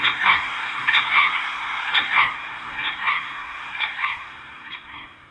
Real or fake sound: fake